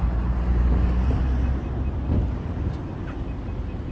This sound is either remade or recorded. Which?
recorded